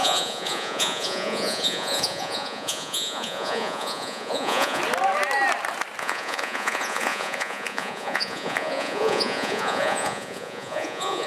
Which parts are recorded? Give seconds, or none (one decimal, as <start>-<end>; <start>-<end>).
4.8-6.0